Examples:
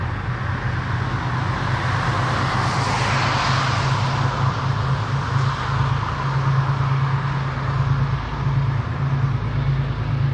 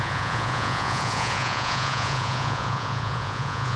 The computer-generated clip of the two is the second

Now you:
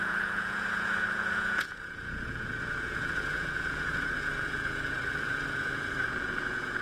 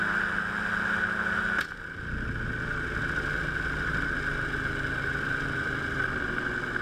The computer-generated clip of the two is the first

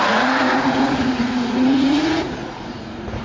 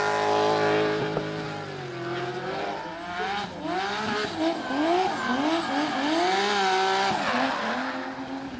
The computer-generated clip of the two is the first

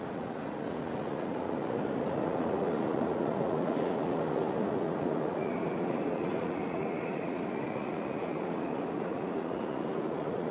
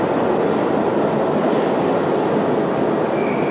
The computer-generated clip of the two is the first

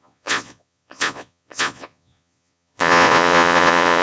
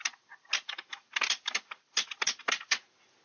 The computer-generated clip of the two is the first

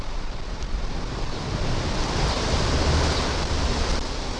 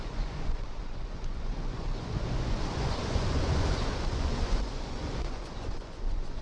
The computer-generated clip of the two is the second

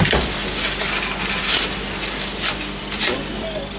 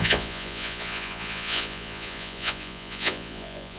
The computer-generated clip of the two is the second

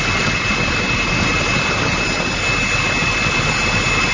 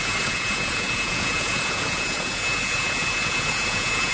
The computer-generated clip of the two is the second